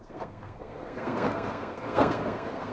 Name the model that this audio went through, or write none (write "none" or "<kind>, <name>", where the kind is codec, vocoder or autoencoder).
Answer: codec, SNAC